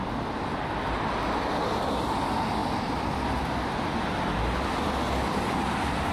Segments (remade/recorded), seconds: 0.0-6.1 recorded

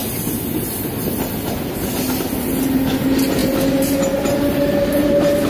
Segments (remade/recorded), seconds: 0.0-5.5 recorded

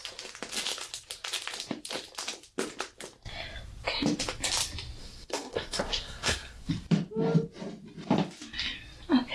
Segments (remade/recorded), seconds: 0.0-5.0 recorded; 5.0-6.7 remade; 6.7-9.3 recorded

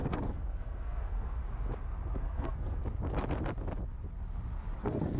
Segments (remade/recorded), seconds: 0.0-1.4 remade; 1.4-2.2 recorded; 2.2-2.8 remade; 2.8-4.8 recorded; 4.8-5.2 remade

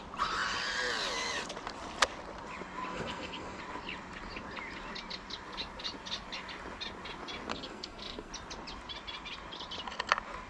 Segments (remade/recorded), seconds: 0.0-2.9 recorded; 2.9-3.6 remade; 3.6-7.5 recorded; 7.5-8.3 remade; 8.3-10.5 recorded